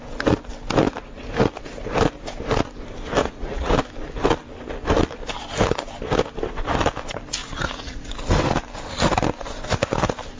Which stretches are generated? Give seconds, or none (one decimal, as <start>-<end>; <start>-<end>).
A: 3.2-3.7; 7.4-8.1